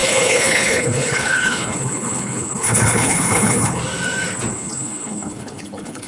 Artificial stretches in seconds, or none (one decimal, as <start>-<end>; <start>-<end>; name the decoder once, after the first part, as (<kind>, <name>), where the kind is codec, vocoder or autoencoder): 0.0-3.8 (codec, HILCodec); 4.5-6.1